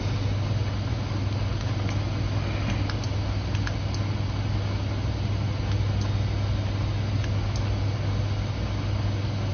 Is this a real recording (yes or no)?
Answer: yes